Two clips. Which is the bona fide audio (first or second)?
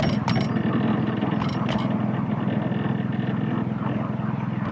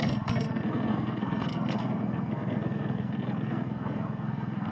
first